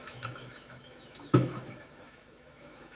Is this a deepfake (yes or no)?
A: yes